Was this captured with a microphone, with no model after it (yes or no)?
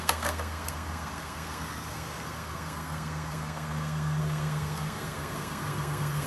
no